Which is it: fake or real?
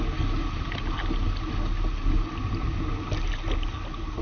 real